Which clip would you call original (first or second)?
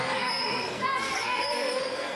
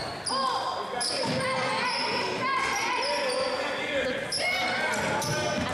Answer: second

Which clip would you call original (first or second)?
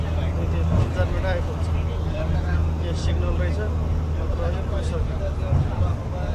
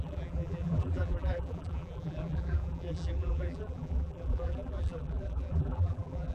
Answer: first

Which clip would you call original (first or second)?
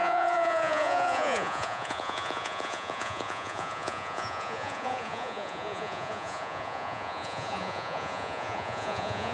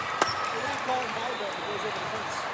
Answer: second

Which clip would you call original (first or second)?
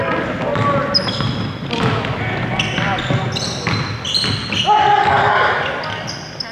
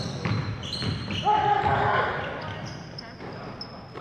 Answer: first